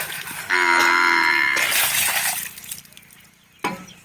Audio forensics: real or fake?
real